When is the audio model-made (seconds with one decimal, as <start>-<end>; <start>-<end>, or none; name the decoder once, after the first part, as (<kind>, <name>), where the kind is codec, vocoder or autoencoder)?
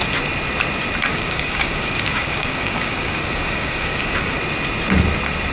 1.1-4.4 (codec, DAC)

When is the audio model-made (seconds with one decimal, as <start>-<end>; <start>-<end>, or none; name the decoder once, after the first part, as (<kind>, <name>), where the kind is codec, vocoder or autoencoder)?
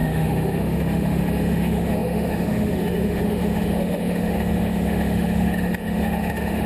0.0-6.7 (autoencoder, DAC-VAE)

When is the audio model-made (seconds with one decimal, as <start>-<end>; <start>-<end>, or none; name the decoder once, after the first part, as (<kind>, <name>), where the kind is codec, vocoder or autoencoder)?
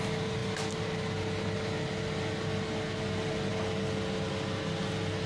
none